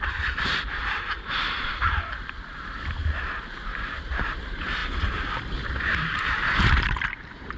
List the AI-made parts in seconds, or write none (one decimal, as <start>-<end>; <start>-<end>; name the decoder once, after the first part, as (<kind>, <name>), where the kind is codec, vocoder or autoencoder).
0.0-3.0 (vocoder, BigVGAN v2); 3.7-7.6